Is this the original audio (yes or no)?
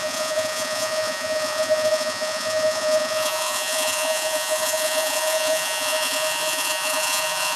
no